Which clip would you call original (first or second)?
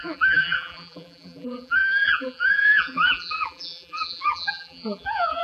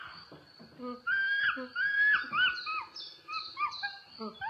second